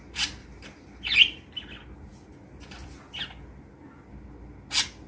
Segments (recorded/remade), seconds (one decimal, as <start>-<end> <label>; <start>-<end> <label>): 0.0-0.4 recorded; 0.4-1.0 remade; 1.0-2.1 recorded; 2.1-3.0 remade; 3.0-5.1 recorded